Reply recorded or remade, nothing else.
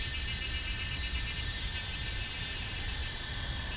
remade